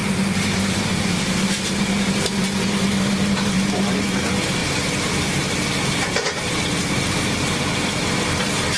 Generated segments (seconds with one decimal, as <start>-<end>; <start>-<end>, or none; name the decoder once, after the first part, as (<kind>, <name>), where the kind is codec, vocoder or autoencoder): 0.0-2.4 (vocoder, BigVGAN v2); 4.6-7.9